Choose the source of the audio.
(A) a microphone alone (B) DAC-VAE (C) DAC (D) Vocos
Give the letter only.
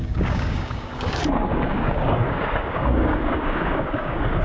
C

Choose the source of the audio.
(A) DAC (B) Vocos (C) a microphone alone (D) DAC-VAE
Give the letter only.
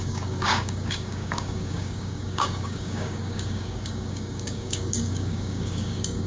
A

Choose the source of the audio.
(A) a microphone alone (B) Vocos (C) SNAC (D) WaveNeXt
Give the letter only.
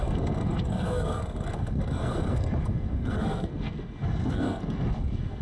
C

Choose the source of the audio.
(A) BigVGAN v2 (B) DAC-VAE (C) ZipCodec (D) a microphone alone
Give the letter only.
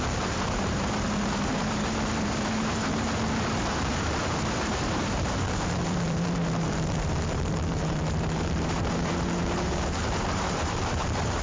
A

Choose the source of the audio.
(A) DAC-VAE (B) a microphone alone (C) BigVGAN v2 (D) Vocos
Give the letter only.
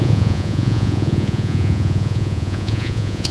D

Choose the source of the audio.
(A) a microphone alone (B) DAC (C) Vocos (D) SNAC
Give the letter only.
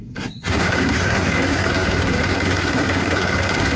D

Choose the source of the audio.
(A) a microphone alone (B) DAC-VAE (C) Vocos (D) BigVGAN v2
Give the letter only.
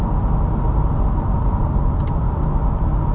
A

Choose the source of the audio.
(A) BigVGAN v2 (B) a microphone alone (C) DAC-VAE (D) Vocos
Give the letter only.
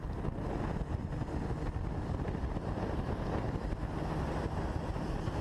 B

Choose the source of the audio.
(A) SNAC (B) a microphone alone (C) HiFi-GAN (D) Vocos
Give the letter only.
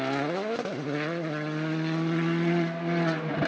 B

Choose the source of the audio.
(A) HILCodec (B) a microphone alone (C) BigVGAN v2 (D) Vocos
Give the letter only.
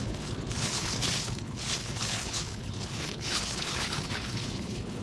A